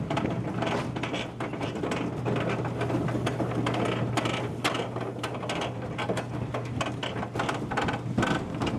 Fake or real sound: real